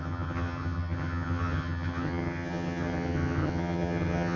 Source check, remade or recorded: remade